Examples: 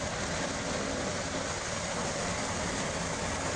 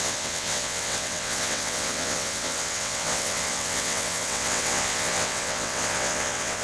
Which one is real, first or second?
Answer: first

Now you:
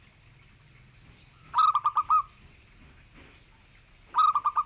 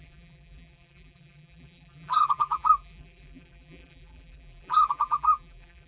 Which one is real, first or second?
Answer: first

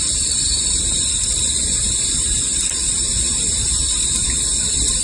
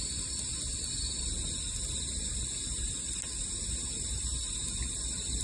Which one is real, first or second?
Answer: second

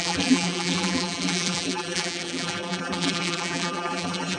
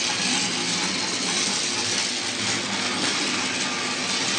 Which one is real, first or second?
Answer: second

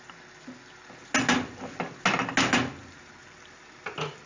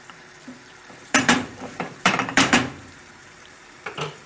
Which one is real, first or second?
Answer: first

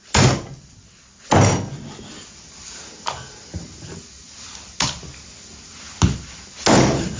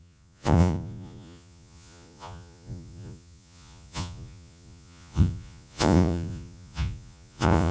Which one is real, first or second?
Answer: first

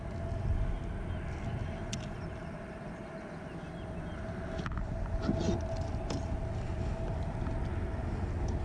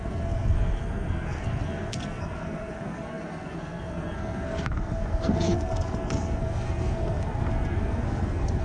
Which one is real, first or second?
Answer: first